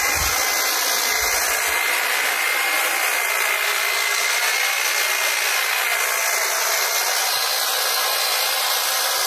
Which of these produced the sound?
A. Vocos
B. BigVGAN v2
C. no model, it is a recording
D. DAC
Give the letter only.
C